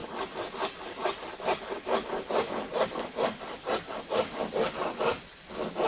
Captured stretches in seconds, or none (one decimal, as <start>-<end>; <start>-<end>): 0.0-5.9